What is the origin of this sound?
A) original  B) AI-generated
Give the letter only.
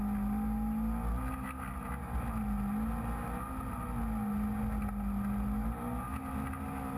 A